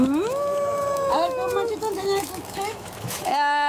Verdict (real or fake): fake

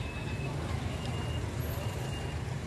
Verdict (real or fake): real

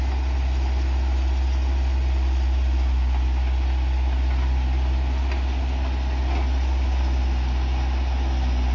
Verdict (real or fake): real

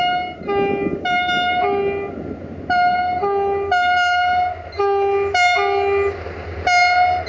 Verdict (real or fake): real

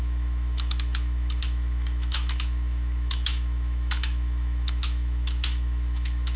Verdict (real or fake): fake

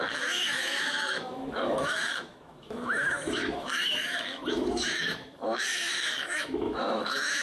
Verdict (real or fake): fake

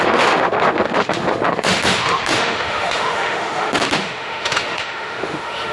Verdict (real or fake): fake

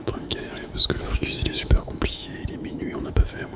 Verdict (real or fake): fake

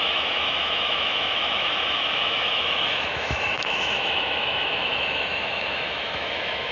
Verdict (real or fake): fake